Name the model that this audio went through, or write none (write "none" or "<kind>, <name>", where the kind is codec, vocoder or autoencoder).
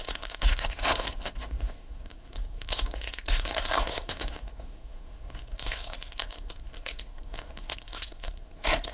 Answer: codec, SNAC